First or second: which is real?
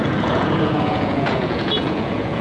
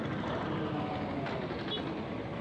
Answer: second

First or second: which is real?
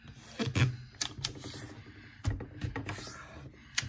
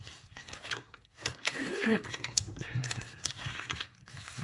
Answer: first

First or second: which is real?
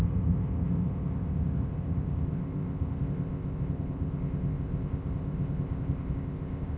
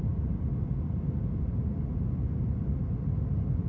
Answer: second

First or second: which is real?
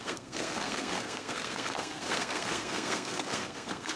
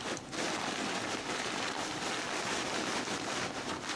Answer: second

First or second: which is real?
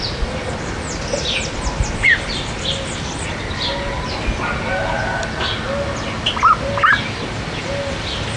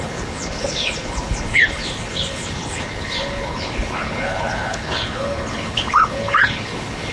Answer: first